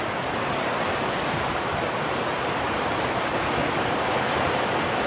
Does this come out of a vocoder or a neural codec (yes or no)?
no